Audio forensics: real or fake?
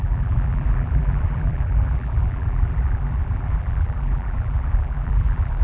fake